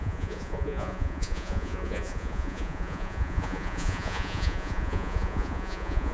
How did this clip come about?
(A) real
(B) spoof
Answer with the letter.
B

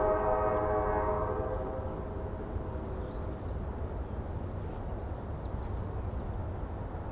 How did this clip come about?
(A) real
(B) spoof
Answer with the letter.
A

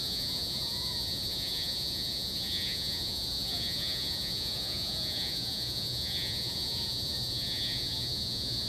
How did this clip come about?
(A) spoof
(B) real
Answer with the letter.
A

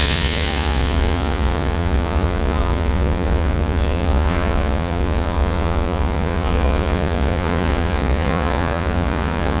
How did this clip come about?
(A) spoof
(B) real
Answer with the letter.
A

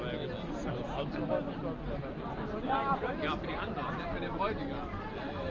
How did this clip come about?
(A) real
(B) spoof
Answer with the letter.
A